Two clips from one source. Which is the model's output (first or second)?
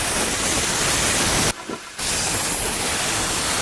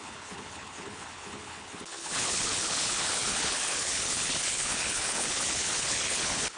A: second